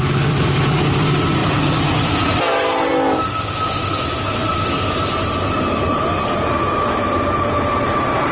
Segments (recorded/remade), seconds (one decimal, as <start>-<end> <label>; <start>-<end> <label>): 0.0-1.4 recorded; 1.4-2.9 remade; 2.9-8.3 recorded